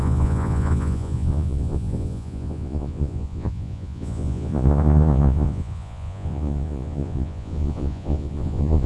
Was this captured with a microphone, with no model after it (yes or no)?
no